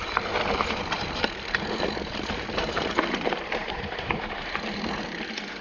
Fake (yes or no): yes